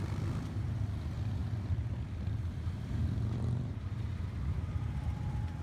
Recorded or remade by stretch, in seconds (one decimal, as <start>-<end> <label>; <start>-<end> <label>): 0.0-1.4 recorded; 1.4-4.3 remade; 4.3-5.6 recorded